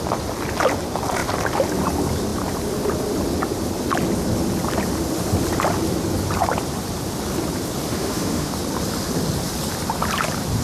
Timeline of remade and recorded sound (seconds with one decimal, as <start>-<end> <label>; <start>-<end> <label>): 0.0-7.9 recorded; 7.9-8.5 remade; 8.5-10.6 recorded